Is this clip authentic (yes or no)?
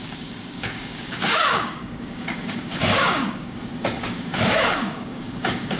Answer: no